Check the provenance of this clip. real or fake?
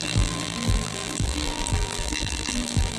fake